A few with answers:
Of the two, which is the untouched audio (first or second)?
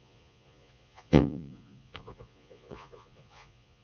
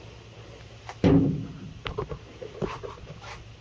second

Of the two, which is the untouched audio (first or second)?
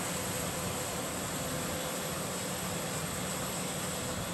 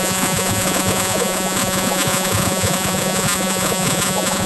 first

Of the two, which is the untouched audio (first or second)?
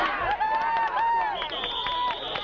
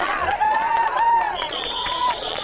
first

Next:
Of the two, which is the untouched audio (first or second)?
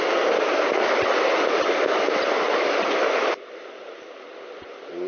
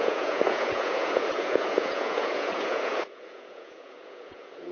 first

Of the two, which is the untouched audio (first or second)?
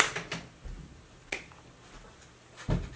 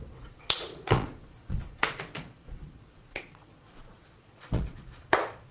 first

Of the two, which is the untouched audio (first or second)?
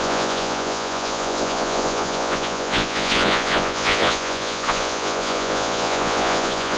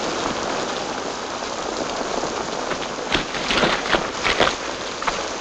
second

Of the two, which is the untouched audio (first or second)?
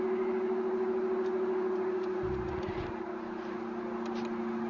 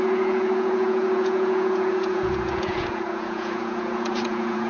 first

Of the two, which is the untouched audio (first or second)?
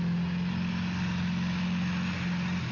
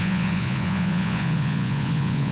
first